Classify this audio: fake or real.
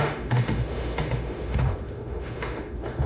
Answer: fake